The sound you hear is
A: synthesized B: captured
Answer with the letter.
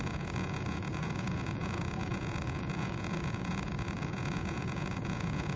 A